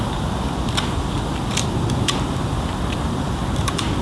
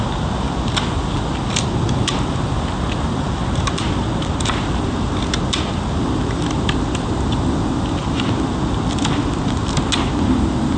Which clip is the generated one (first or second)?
first